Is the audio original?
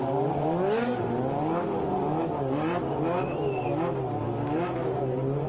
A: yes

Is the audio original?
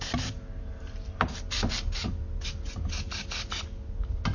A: yes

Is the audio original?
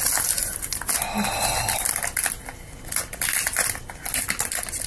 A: yes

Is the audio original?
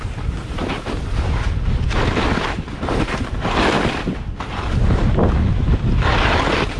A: yes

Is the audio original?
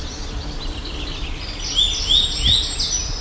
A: yes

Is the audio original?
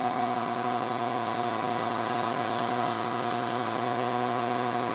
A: no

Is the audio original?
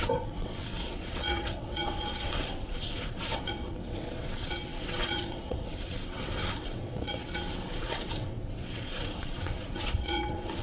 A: no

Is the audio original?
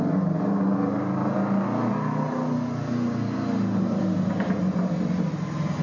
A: yes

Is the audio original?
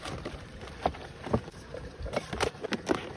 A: yes